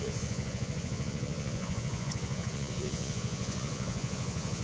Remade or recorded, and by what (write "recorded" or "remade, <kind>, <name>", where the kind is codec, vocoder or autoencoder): remade, vocoder, Vocos